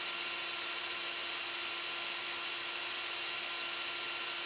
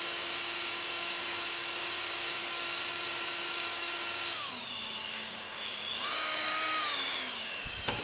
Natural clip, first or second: first